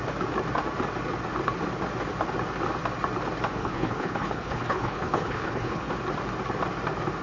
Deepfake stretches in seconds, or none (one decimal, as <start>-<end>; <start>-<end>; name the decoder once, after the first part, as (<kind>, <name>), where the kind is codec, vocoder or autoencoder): 3.6-5.9 (codec, HILCodec)

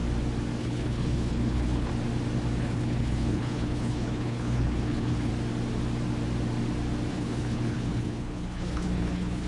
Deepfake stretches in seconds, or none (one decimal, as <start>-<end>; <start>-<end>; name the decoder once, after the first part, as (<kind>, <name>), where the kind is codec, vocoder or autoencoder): 0.6-1.9 (codec, HILCodec); 2.6-5.3; 7.1-9.5

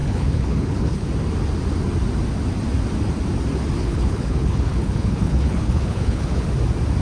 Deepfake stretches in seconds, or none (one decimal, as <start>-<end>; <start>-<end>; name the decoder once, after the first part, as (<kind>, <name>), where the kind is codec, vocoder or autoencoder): 0.0-1.1 (codec, HILCodec); 3.8-6.5

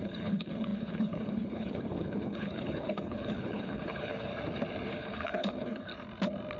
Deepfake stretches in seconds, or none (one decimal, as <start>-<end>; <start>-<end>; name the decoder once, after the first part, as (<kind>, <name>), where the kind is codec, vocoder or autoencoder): 0.0-4.3 (codec, HILCodec); 4.9-5.9

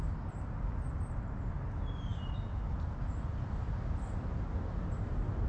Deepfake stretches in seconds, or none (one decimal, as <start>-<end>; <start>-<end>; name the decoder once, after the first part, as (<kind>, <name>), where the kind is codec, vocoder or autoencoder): none

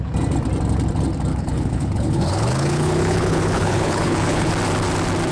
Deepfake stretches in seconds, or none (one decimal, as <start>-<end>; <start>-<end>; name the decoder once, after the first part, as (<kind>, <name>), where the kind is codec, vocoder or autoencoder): 1.3-4.5 (codec, HILCodec)